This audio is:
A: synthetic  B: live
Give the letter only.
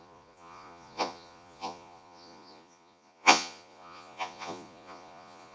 A